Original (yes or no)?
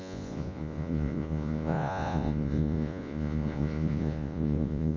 no